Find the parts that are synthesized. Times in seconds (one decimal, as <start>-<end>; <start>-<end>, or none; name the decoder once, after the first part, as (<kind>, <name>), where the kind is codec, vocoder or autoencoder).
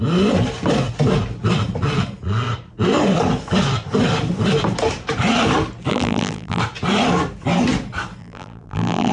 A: 5.9-6.6 (vocoder, BigVGAN v2); 8.2-9.1